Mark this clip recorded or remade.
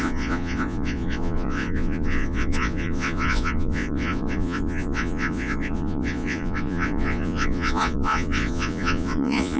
remade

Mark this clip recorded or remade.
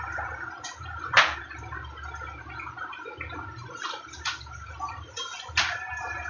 recorded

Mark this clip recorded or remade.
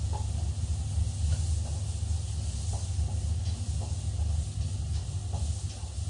recorded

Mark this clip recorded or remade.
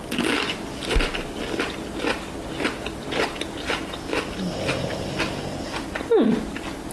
recorded